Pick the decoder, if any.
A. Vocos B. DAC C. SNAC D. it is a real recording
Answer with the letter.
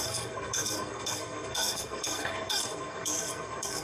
C